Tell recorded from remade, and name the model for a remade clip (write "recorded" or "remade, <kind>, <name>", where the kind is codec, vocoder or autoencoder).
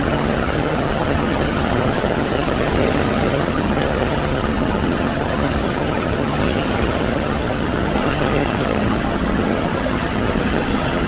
remade, vocoder, HiFi-GAN